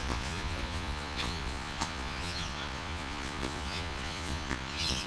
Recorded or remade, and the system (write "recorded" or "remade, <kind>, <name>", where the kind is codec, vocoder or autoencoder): remade, vocoder, Vocos